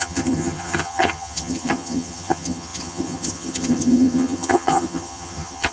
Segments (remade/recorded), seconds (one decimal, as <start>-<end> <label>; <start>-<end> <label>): 0.0-5.7 remade